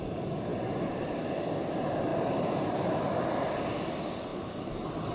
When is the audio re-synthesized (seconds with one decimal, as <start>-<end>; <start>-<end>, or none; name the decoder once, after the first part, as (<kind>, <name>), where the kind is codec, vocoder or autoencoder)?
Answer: 0.5-1.4 (vocoder, BigVGAN v2); 2.1-3.5; 4.3-5.1